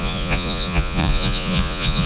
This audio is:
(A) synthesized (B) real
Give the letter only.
A